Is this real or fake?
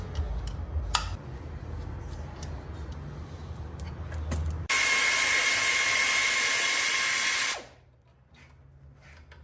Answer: real